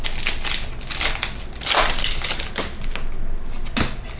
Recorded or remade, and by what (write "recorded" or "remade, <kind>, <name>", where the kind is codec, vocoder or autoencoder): recorded